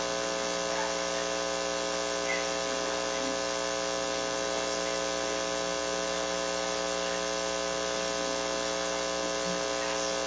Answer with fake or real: real